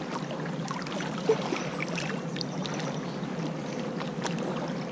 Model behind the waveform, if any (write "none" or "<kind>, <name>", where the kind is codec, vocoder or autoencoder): none